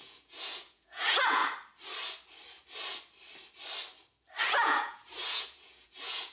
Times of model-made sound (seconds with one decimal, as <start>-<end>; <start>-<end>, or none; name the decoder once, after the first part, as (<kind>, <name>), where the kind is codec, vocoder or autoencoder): 0.0-1.4 (vocoder, Vocos); 4.4-6.3